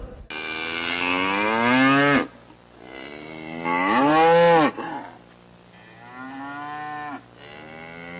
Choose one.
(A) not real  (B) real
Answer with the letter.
B